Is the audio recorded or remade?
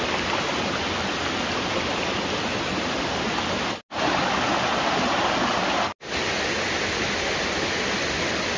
recorded